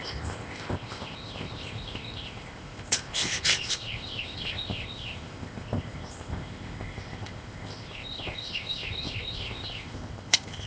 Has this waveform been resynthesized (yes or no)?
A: yes